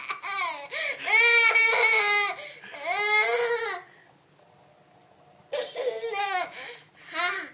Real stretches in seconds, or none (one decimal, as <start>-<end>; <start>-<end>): 0.0-6.2; 6.9-7.5